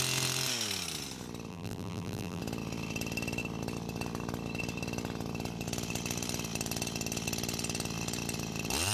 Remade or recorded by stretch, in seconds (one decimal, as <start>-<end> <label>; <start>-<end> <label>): 0.0-1.5 recorded; 1.5-2.4 remade; 2.4-8.9 recorded